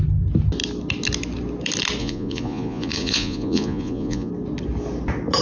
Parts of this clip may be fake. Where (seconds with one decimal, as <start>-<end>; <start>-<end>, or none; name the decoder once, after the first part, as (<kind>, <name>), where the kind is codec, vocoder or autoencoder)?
2.0-4.3 (vocoder, Vocos)